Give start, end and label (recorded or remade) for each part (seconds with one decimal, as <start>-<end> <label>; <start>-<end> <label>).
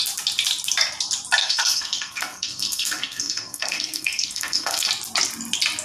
0.0-1.4 recorded; 1.4-4.9 remade; 4.9-5.8 recorded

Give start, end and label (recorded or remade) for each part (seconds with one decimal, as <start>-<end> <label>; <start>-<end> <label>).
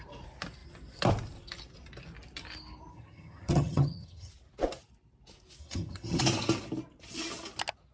0.0-2.9 recorded; 2.9-4.3 remade; 4.3-5.6 recorded; 5.6-6.2 remade; 6.2-7.9 recorded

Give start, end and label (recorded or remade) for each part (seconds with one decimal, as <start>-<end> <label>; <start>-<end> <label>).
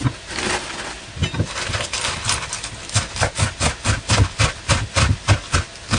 0.0-6.0 recorded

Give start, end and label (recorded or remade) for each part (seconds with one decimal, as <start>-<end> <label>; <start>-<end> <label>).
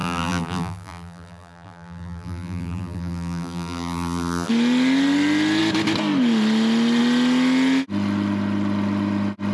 0.0-4.5 remade; 4.5-9.5 recorded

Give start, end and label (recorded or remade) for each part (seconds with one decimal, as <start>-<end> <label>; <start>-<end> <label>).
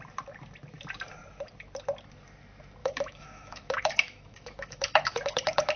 0.0-2.8 recorded; 2.8-5.8 remade